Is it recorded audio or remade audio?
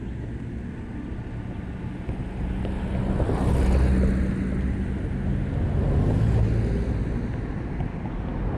recorded